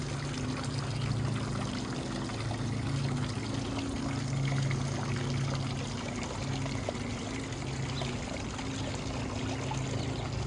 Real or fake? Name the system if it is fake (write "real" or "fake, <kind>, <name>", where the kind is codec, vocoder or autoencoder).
real